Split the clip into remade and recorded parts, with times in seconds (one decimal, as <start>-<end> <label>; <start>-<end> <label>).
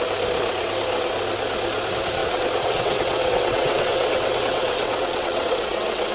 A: 0.0-2.2 recorded; 2.2-6.1 remade